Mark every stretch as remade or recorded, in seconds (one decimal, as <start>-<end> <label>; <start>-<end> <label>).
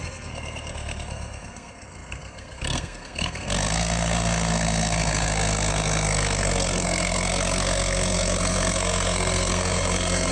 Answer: 0.0-10.3 remade